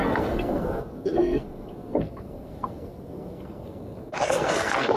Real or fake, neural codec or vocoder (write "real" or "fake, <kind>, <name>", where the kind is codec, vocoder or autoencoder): fake, codec, SNAC